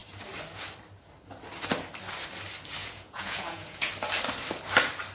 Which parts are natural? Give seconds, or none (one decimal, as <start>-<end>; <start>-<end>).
0.0-2.8; 3.9-5.1